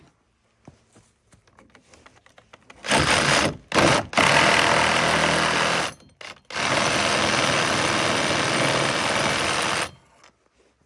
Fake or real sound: real